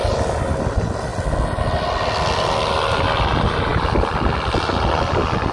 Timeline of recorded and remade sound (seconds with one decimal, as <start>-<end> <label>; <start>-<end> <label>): 0.0-5.5 recorded